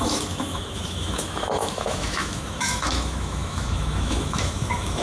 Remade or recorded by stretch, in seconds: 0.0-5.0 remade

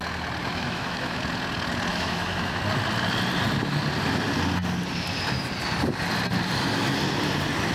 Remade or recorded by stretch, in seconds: 0.0-0.4 recorded; 0.4-1.2 remade; 1.2-1.9 recorded; 1.9-2.6 remade; 2.6-7.7 recorded

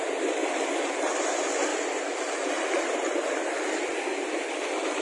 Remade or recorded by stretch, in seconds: 0.0-5.0 recorded

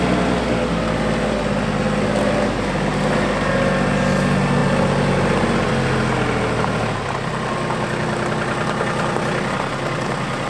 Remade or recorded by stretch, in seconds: 0.0-10.5 recorded

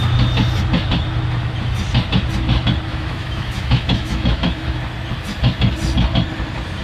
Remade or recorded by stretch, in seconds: 0.0-2.9 recorded; 2.9-4.8 remade; 4.8-6.8 recorded

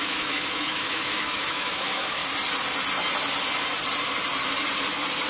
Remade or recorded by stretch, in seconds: 0.0-2.2 remade; 2.2-5.3 recorded